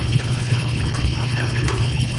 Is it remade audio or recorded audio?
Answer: remade